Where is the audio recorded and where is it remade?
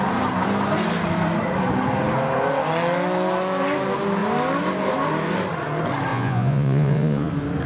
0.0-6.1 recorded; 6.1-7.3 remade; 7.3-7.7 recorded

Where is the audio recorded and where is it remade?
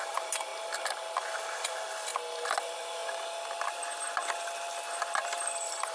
0.0-0.5 remade; 0.5-1.3 recorded; 1.3-2.1 remade; 2.1-2.6 recorded; 2.6-3.0 remade; 3.0-5.0 recorded; 5.0-5.9 remade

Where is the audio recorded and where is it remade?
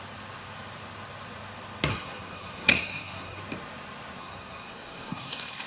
0.0-1.9 recorded; 1.9-3.4 remade; 3.4-4.2 recorded; 4.2-5.7 remade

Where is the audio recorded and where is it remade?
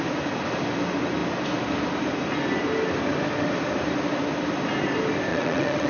0.0-5.3 recorded; 5.3-5.9 remade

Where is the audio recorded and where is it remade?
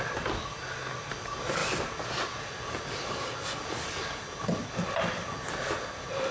0.0-6.3 recorded